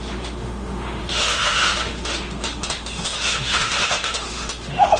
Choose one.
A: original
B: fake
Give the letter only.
B